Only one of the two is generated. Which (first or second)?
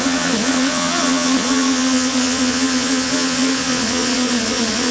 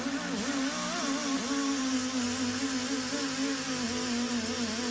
first